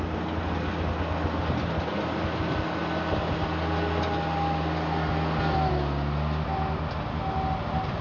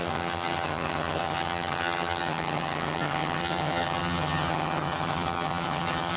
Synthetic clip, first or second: second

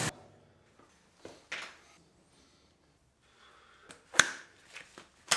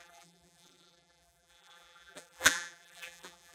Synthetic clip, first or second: second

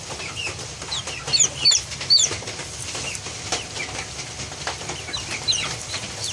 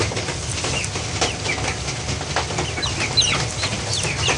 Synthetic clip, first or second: first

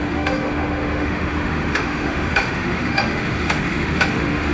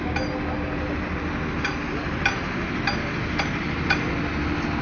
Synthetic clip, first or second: first